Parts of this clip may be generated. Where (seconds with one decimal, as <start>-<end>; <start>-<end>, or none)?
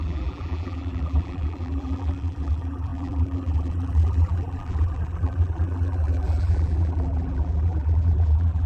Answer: 0.0-8.7